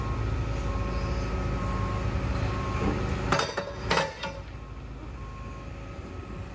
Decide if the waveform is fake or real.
real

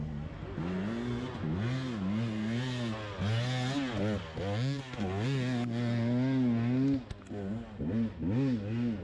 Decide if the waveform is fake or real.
real